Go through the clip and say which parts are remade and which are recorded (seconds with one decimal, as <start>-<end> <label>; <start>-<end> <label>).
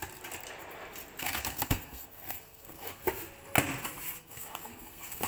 0.0-1.2 recorded; 1.2-3.0 remade; 3.0-4.2 recorded; 4.2-5.3 remade